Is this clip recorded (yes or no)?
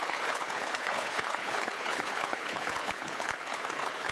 no